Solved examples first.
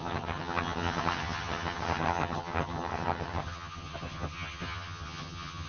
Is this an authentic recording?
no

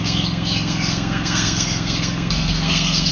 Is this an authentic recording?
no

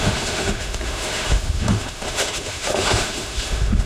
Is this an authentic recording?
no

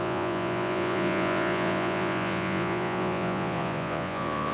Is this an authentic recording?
no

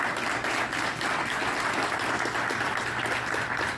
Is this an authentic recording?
yes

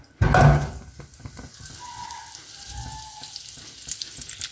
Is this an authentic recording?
yes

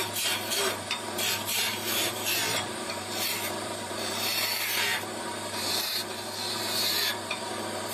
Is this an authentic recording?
no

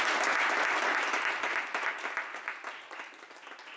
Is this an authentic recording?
yes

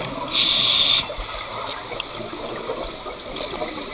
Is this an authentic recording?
yes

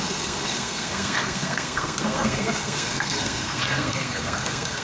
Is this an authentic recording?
no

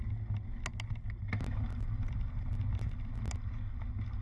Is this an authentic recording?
yes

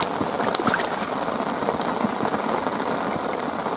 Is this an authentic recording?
yes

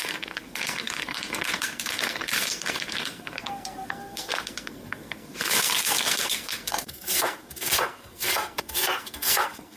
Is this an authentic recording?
no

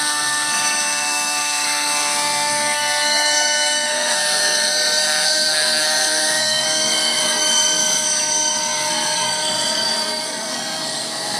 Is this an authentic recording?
no